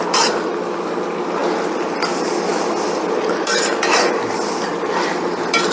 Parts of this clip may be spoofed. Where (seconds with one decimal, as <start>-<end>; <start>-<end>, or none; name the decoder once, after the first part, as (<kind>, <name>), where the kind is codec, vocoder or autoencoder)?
none

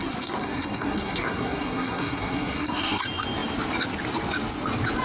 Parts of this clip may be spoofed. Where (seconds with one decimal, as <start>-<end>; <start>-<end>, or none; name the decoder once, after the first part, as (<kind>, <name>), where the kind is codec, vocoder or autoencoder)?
0.0-3.0 (codec, SNAC)

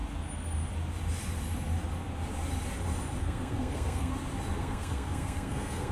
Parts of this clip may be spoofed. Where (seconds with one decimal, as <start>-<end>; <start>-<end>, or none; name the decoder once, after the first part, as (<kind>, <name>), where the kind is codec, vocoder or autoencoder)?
3.2-4.1 (codec, SNAC); 4.6-5.9

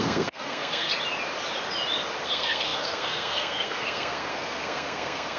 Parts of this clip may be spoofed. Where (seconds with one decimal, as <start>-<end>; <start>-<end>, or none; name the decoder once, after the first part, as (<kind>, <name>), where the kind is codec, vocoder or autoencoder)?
0.0-0.9 (codec, SNAC); 2.2-5.4

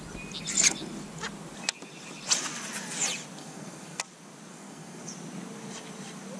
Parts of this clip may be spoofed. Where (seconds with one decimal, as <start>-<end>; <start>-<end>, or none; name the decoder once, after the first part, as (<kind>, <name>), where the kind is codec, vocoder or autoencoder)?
3.4-4.0 (codec, SNAC); 4.5-5.1

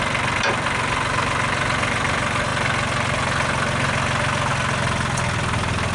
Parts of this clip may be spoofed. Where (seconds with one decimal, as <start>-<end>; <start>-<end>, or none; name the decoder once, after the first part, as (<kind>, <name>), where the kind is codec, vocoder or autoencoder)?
none

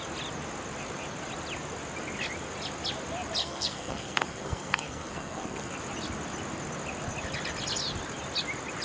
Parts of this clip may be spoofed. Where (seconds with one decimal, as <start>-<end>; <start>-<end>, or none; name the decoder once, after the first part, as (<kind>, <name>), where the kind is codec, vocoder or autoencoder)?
3.4-5.7 (codec, SNAC)

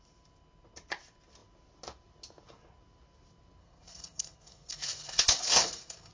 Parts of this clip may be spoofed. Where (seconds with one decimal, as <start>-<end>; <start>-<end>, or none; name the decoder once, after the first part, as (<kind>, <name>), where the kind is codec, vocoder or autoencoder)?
3.6-6.1 (codec, SNAC)